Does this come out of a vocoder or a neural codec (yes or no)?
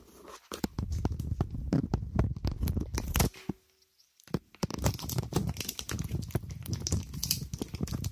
no